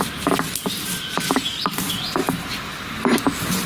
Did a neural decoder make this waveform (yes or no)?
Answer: no